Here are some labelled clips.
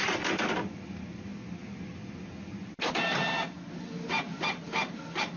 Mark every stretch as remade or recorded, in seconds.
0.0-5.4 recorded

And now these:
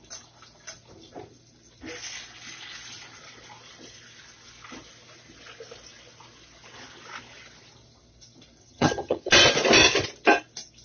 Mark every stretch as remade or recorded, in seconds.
0.0-8.6 recorded; 8.6-9.3 remade; 9.3-10.8 recorded

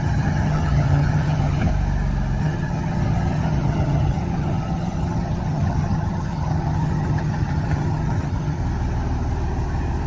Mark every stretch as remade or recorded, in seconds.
0.0-1.7 remade; 1.7-2.4 recorded; 2.4-8.6 remade; 8.6-10.1 recorded

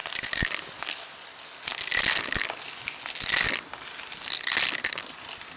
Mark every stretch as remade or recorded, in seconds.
0.0-5.6 recorded